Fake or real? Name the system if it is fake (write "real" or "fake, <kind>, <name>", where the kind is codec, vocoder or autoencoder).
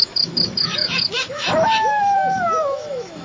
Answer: fake, autoencoder, DAC-VAE